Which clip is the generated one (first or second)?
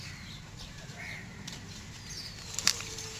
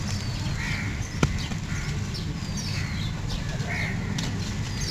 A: first